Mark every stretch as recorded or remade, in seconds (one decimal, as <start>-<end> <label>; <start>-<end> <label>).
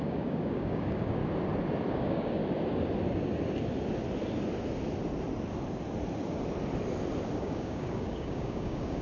0.0-1.2 remade; 1.2-1.9 recorded; 1.9-2.4 remade; 2.4-7.4 recorded; 7.4-9.0 remade